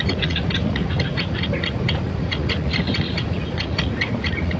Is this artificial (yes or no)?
yes